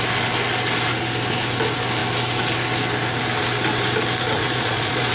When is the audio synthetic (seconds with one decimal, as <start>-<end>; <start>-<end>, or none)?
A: 4.4-5.1